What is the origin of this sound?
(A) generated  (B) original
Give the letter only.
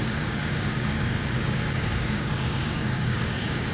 A